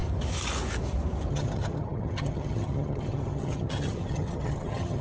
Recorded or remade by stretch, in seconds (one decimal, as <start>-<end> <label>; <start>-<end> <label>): 0.0-1.3 recorded; 1.3-5.0 remade